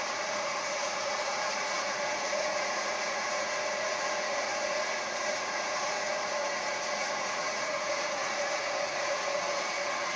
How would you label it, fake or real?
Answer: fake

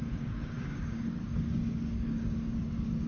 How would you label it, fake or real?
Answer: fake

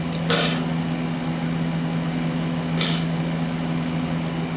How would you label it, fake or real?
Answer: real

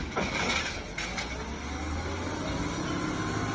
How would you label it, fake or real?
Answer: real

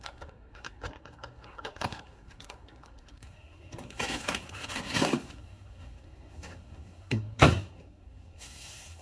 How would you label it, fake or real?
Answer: fake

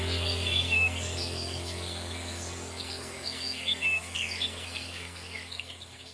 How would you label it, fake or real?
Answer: fake